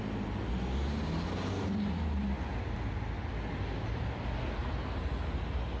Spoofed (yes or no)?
no